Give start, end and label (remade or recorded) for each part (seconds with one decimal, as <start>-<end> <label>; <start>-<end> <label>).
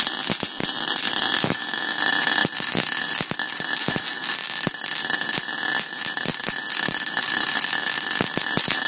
0.0-8.9 recorded